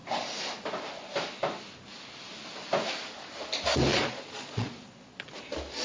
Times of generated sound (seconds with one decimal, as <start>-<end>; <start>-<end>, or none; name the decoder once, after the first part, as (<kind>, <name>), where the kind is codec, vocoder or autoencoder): 3.9-5.3 (vocoder, Vocos)